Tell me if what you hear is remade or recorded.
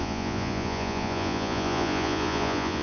remade